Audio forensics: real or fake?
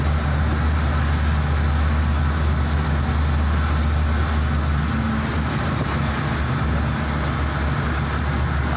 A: real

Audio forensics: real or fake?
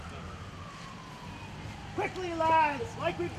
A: real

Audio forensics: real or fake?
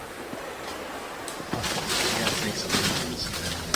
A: real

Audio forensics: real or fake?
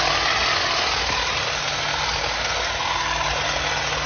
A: real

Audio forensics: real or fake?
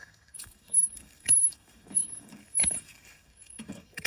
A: fake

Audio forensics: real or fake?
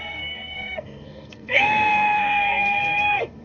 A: fake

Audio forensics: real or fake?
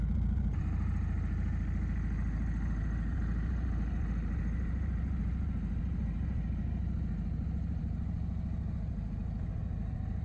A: real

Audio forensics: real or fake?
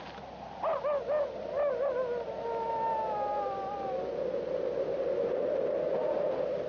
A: real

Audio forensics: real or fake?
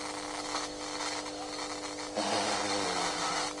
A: real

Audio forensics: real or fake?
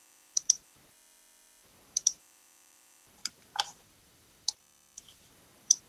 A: fake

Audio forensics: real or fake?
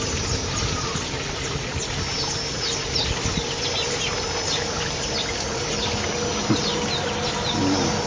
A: real